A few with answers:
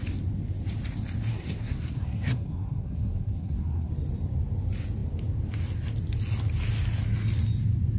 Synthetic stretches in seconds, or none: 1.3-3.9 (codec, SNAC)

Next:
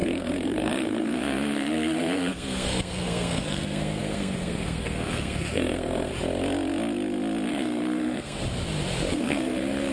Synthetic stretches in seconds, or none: 0.0-6.1 (codec, SNAC); 7.5-8.4; 9.1-9.9